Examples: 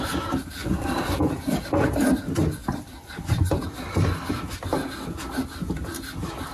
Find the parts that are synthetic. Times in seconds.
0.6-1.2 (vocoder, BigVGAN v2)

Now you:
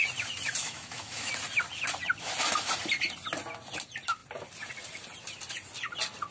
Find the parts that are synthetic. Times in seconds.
0.6-1.3 (autoencoder, DAC-VAE)

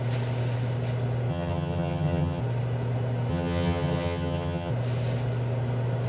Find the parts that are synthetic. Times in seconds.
1.3-2.4 (vocoder, HiFi-GAN); 3.3-4.7